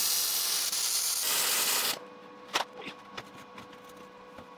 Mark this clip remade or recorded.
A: recorded